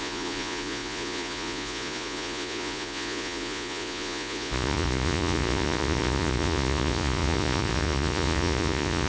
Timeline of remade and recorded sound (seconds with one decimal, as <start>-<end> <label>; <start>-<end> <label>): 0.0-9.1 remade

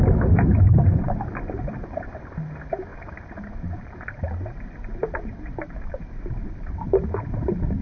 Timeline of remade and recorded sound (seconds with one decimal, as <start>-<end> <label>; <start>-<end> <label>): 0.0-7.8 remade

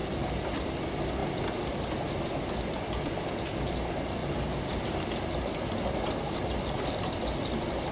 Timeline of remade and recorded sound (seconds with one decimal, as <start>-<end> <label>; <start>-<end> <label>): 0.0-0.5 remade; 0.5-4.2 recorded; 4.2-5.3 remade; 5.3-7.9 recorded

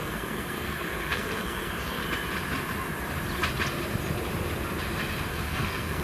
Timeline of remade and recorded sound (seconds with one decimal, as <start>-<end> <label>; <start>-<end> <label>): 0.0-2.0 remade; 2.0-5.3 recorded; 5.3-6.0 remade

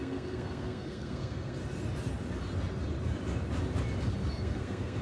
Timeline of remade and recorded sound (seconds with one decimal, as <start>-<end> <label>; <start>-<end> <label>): 0.0-1.6 remade; 1.6-4.3 recorded; 4.3-5.0 remade

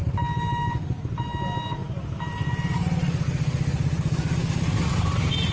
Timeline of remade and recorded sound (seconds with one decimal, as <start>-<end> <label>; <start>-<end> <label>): 0.0-5.5 recorded

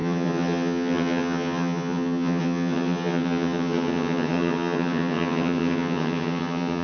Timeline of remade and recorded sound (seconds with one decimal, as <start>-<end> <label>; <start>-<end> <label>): 0.0-6.8 remade